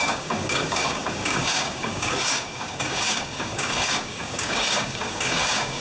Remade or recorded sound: remade